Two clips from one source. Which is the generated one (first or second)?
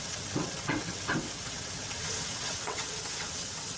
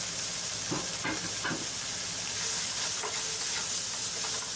first